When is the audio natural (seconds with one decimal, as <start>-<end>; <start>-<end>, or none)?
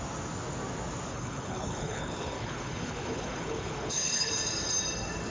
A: 0.0-1.1; 4.3-5.3